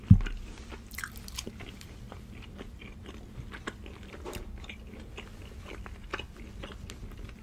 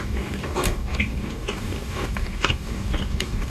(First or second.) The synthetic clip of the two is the second